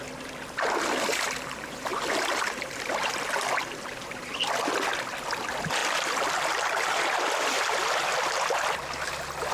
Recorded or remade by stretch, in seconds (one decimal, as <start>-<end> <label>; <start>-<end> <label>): 0.0-1.9 recorded; 1.9-3.1 remade; 3.1-5.8 recorded; 5.8-7.7 remade; 7.7-9.5 recorded